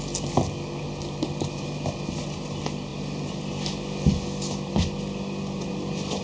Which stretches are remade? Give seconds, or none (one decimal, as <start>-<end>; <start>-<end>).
none

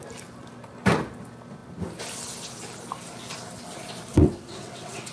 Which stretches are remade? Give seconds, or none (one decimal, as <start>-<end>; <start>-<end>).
4.1-5.1

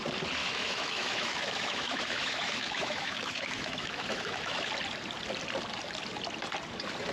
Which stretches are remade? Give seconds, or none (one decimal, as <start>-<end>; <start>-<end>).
0.4-4.7

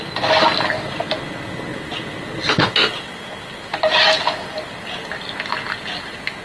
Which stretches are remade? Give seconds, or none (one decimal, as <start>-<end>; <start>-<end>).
none

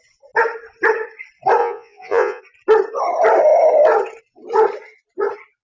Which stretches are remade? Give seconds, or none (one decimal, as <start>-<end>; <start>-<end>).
1.6-2.4

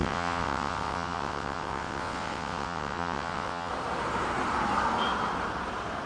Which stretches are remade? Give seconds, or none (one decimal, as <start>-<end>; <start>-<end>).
0.0-3.7

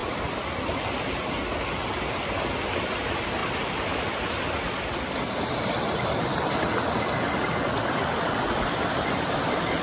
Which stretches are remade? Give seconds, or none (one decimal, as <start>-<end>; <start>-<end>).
none